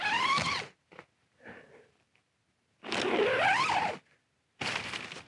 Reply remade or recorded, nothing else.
recorded